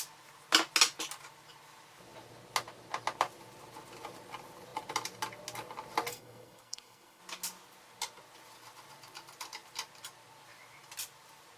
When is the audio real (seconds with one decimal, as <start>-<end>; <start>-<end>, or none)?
0.0-6.1; 7.2-11.6